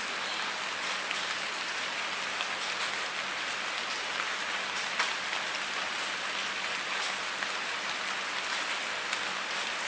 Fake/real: real